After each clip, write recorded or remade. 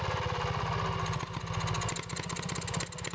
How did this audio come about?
recorded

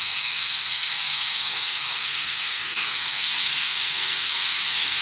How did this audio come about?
remade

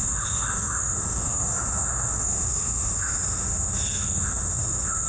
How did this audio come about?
remade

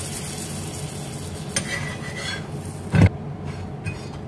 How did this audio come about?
recorded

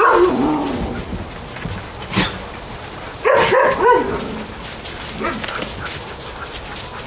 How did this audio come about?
recorded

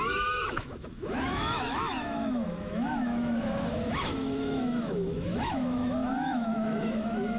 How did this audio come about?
remade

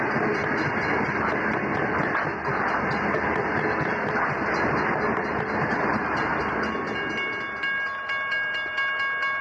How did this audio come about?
recorded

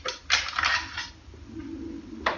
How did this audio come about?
recorded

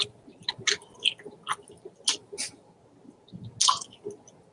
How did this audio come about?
recorded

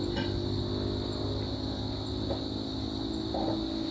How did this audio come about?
recorded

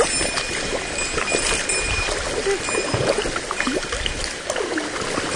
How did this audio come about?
recorded